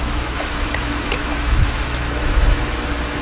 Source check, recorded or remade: remade